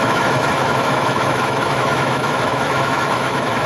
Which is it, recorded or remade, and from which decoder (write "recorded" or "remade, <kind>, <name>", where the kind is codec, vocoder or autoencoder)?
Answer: remade, autoencoder, DAC-VAE